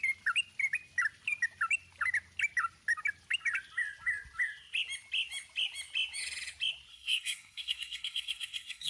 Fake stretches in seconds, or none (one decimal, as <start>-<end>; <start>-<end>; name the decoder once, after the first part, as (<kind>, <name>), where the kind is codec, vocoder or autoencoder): 6.9-8.9 (codec, SNAC)